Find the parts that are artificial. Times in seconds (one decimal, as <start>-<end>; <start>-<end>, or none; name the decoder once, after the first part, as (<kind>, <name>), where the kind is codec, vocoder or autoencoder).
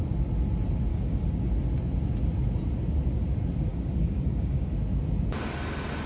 0.9-1.5 (codec, DAC); 3.7-4.7